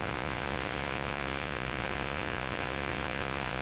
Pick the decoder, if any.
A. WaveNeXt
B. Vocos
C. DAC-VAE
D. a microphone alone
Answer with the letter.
B